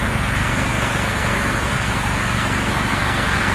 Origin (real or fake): fake